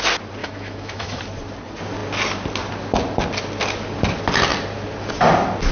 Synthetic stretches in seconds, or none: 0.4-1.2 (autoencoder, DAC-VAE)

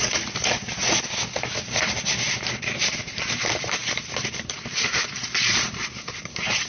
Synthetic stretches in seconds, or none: 0.0-0.8 (vocoder, BigVGAN v2); 1.6-6.7

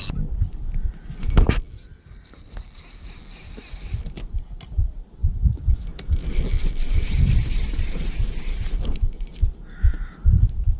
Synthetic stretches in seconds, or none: none